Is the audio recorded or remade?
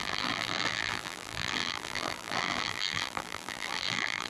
remade